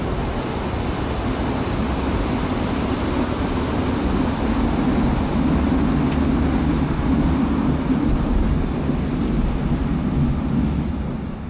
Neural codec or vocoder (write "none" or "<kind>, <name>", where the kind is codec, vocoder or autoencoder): none